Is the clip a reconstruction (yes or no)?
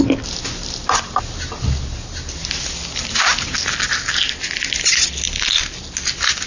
no